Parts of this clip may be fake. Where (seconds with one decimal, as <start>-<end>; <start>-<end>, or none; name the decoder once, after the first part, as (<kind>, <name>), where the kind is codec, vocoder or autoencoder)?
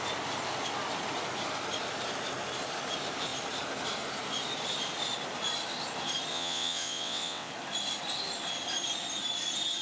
6.3-7.5 (vocoder, WaveNeXt)